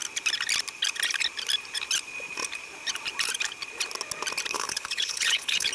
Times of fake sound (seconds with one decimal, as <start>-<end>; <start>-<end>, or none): 4.5-5.7

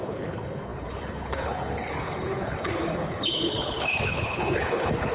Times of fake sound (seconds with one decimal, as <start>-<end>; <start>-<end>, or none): 0.0-5.1

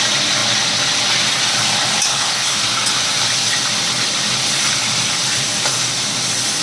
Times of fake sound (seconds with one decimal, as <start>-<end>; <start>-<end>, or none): 2.1-2.6

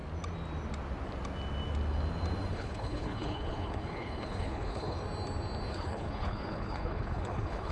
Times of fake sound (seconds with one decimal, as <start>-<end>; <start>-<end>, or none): 2.5-5.0; 5.7-7.7